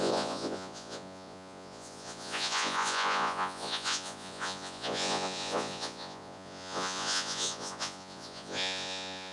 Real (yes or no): no